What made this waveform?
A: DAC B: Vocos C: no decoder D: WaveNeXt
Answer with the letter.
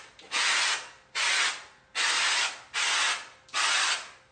C